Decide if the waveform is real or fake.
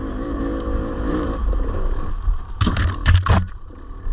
fake